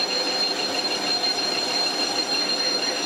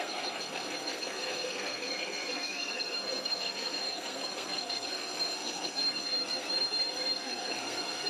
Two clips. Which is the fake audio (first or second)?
second